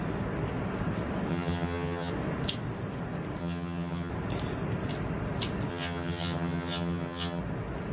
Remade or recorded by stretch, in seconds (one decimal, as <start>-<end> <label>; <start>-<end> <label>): 0.0-1.3 recorded; 1.3-2.1 remade; 2.1-3.4 recorded; 3.4-4.1 remade; 4.1-5.7 recorded; 5.7-7.4 remade; 7.4-7.9 recorded